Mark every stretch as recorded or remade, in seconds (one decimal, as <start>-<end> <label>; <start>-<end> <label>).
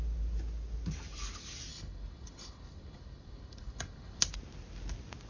0.0-1.7 recorded; 1.7-4.2 remade; 4.2-5.3 recorded